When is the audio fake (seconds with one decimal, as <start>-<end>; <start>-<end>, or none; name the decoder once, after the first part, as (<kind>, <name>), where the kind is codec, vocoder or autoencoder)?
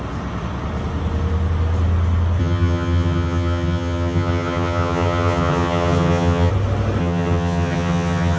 2.4-6.5 (vocoder, HiFi-GAN); 7.0-8.4